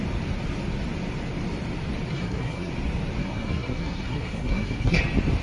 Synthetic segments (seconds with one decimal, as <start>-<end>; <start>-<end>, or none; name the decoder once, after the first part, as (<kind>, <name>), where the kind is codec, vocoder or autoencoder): 2.1-2.7 (codec, SNAC); 3.2-5.0